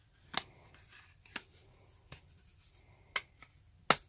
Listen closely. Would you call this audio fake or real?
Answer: real